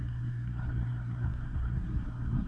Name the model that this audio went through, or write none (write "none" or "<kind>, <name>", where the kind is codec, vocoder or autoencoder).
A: codec, SNAC